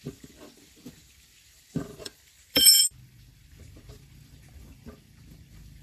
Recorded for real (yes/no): no